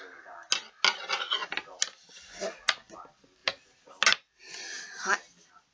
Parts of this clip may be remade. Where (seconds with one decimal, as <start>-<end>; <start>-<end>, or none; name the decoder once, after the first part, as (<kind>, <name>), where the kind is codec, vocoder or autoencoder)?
none